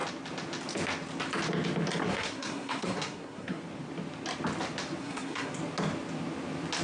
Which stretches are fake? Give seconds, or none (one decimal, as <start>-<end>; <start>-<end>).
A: 2.0-3.6; 5.0-5.5